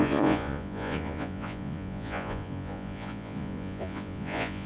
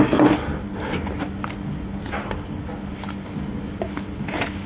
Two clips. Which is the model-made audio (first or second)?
first